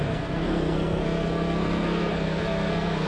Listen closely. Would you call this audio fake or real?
fake